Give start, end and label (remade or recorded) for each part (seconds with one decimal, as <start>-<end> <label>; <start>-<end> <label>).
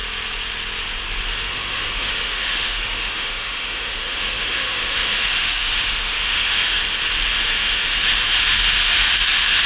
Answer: 0.0-1.3 recorded; 1.3-6.8 remade; 6.8-7.4 recorded; 7.4-9.7 remade